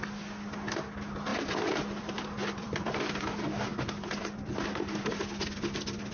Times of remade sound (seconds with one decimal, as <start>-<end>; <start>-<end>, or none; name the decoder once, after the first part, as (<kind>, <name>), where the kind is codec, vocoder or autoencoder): 1.3-2.8 (vocoder, BigVGAN v2)